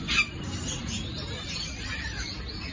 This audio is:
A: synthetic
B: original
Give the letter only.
B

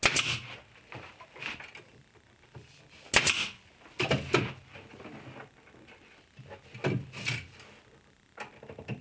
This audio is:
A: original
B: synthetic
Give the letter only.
A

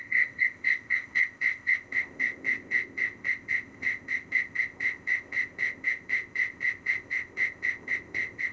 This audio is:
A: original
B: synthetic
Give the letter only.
B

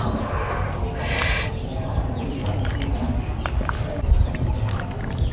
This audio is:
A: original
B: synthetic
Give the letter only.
A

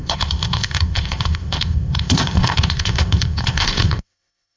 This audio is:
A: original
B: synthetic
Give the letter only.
B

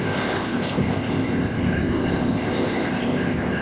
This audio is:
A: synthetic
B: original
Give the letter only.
A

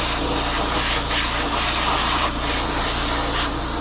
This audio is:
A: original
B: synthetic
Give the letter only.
A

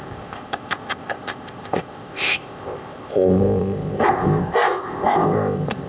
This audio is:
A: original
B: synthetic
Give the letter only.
B